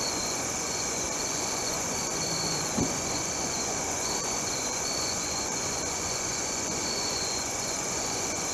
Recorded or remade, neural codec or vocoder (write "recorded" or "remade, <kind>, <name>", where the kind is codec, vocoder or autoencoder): remade, vocoder, Vocos